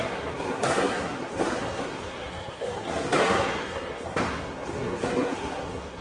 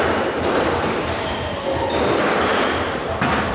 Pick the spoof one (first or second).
first